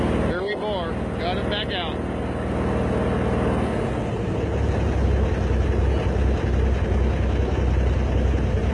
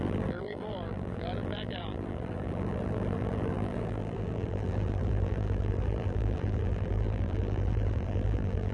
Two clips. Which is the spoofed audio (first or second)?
second